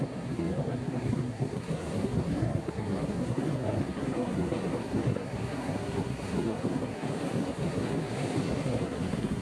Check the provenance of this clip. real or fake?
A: fake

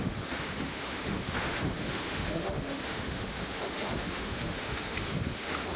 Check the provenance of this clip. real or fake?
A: fake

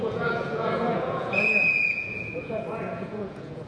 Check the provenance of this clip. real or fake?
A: fake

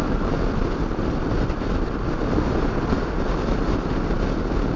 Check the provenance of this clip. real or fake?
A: real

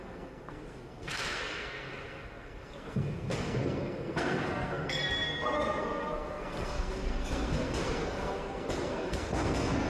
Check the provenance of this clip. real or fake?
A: fake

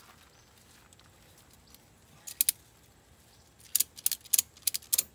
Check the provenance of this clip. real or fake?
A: real